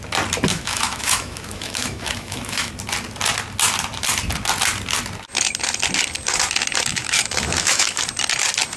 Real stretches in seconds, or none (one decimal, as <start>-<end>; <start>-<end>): 0.0-0.5; 2.7-6.9; 8.0-8.8